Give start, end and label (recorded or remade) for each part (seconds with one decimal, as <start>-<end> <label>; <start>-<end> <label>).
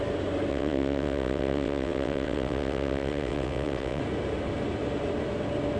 0.0-0.5 recorded; 0.5-4.0 remade; 4.0-5.8 recorded